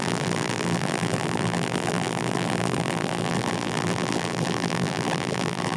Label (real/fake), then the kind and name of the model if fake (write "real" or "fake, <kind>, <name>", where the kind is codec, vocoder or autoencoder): fake, vocoder, BigVGAN v2